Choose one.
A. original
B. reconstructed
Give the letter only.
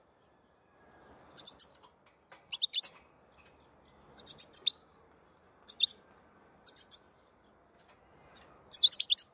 A